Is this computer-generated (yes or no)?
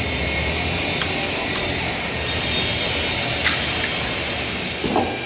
no